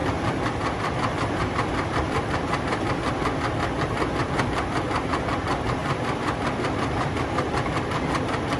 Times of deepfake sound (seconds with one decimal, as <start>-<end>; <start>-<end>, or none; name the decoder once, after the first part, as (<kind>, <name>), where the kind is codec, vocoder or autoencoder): 0.0-2.9 (vocoder, BigVGAN v2); 5.8-6.6